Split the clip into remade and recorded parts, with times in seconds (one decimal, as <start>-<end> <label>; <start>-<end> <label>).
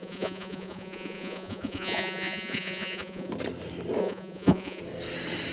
0.0-3.3 remade; 3.3-4.0 recorded; 4.0-4.8 remade; 4.8-5.5 recorded